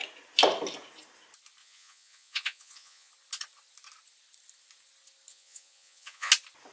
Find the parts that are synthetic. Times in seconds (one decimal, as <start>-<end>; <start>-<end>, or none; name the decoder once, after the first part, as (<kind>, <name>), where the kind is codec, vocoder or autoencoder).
1.6-3.1 (vocoder, Vocos); 5.3-6.3